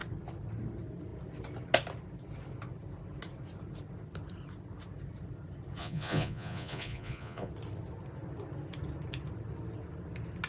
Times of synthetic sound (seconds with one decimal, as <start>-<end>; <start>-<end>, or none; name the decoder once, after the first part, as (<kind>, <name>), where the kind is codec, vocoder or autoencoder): 5.8-7.5 (vocoder, Vocos)